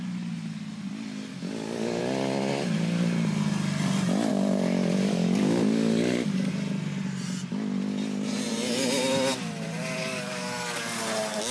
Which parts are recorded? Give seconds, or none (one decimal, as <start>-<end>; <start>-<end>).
0.0-1.3; 2.0-4.3; 6.5-10.0; 11.0-11.5